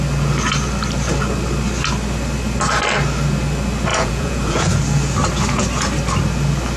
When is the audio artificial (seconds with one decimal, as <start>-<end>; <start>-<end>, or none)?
3.9-4.8